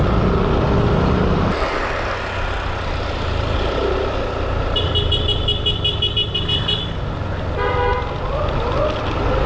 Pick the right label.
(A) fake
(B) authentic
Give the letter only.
B